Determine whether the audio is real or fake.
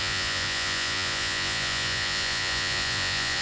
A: fake